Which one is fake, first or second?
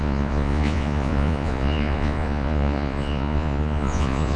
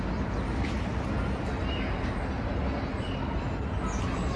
first